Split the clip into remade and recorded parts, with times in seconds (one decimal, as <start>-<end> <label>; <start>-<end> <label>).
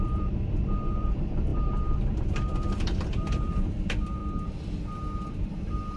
0.0-4.2 remade; 4.2-6.0 recorded